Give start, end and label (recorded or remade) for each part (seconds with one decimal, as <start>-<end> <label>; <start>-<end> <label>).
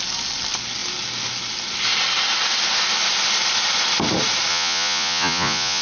0.0-4.5 recorded; 4.5-5.8 remade